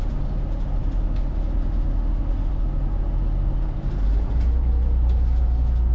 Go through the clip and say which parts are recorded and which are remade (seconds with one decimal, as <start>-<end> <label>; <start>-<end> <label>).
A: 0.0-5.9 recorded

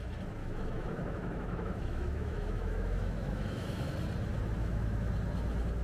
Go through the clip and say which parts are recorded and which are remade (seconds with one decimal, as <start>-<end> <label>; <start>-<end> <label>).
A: 0.0-0.4 recorded; 0.4-3.9 remade; 3.9-4.6 recorded; 4.6-5.1 remade; 5.1-5.8 recorded

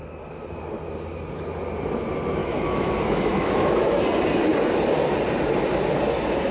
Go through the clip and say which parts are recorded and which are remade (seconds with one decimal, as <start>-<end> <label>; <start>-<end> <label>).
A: 0.0-2.4 recorded; 2.4-4.0 remade; 4.0-6.5 recorded